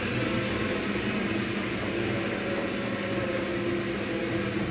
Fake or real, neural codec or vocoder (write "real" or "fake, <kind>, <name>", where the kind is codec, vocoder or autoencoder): real